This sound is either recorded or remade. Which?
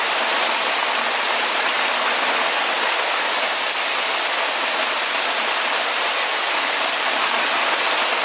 recorded